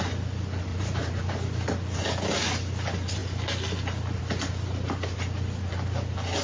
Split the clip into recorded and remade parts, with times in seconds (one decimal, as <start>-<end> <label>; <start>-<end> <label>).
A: 0.0-0.7 recorded; 0.7-1.3 remade; 1.3-6.4 recorded

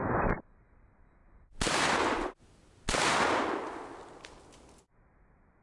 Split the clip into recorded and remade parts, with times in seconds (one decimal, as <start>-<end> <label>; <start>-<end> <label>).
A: 0.0-5.6 recorded

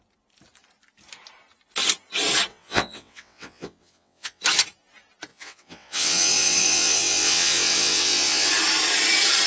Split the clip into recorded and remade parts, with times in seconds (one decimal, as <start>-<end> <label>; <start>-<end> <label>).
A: 0.0-2.5 recorded; 2.5-4.4 remade; 4.4-5.3 recorded; 5.3-8.5 remade; 8.5-9.5 recorded

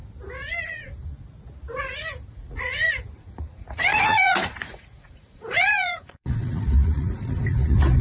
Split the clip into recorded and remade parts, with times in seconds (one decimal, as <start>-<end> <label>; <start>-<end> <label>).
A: 0.0-0.6 recorded; 0.6-1.1 remade; 1.1-2.3 recorded; 2.3-8.0 remade

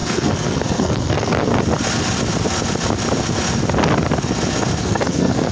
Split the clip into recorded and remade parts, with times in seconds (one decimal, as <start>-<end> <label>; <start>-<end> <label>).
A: 0.0-1.5 remade; 1.5-4.8 recorded; 4.8-5.5 remade

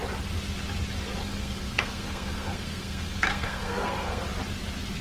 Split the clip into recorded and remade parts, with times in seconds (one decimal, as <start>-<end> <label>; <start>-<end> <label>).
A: 0.0-1.2 recorded; 1.2-4.2 remade; 4.2-5.0 recorded

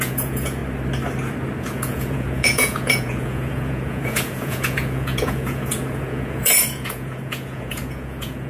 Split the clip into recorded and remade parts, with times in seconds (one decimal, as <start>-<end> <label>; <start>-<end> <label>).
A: 0.0-0.6 remade; 0.6-1.6 recorded; 1.6-8.5 remade